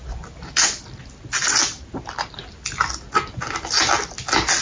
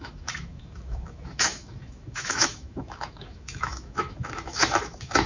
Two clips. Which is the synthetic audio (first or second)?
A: second